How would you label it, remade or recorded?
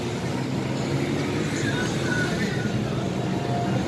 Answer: recorded